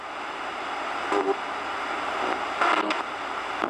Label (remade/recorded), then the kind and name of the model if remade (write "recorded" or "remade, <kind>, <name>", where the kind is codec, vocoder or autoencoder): recorded